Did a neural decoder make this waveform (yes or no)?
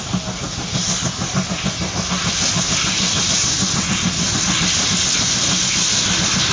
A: no